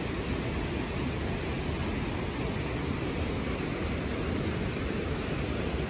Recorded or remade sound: recorded